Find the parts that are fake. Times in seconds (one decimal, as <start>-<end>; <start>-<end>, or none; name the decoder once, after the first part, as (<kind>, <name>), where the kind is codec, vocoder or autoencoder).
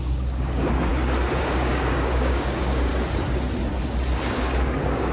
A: 0.0-0.9 (codec, DAC); 1.4-2.9; 4.3-5.1